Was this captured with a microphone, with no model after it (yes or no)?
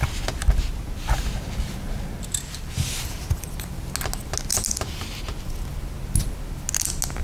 yes